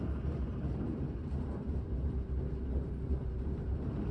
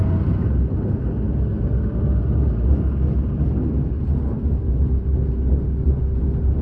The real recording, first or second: second